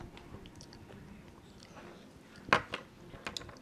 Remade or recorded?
recorded